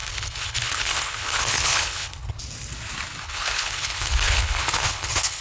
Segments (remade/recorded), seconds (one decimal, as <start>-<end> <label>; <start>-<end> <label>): 0.0-2.4 remade; 2.4-3.2 recorded; 3.2-5.4 remade